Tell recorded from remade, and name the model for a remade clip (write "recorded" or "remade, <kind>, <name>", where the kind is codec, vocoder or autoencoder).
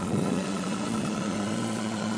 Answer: remade, vocoder, Vocos